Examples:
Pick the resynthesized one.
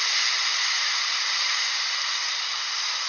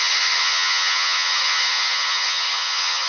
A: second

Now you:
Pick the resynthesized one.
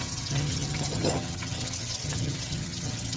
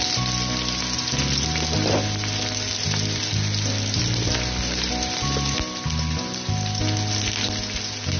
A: first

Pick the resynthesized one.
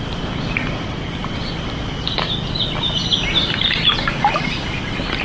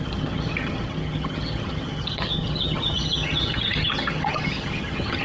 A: second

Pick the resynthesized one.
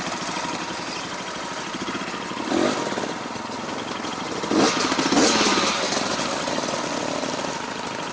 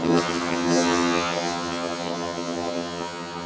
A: second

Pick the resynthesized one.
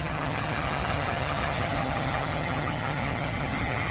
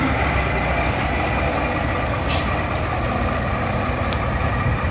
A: first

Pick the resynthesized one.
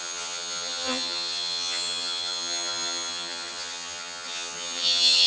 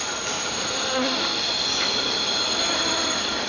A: first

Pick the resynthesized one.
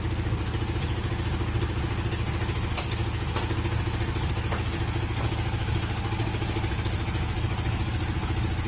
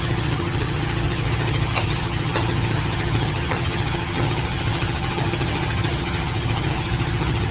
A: second